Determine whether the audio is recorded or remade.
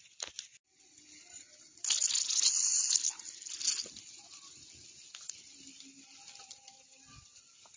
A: recorded